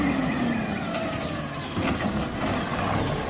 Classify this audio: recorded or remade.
recorded